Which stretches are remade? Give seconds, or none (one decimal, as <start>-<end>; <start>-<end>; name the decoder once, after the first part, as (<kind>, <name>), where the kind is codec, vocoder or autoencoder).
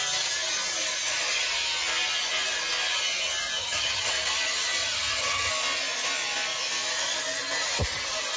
3.6-4.1 (vocoder, HiFi-GAN); 4.8-5.5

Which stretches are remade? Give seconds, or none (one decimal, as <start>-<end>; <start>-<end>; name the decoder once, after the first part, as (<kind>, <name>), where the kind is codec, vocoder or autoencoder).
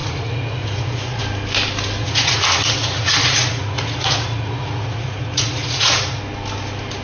0.0-1.2 (vocoder, Vocos); 2.0-6.2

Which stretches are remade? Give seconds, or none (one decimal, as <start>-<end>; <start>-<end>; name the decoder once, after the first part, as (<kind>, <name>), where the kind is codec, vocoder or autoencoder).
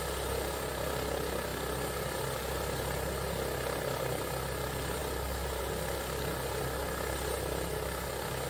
none